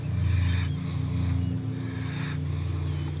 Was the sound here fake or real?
real